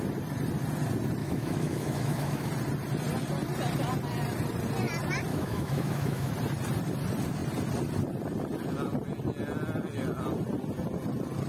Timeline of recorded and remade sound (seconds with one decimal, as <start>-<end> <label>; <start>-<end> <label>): 0.0-1.2 recorded; 1.2-2.5 remade; 2.5-5.3 recorded; 5.3-6.3 remade; 6.3-11.5 recorded